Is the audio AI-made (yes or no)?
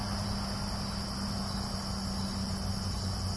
no